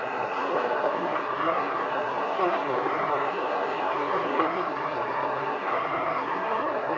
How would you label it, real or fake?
fake